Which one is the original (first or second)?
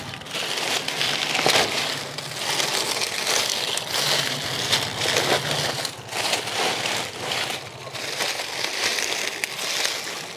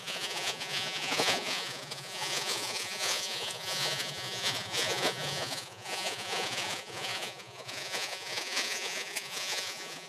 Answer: first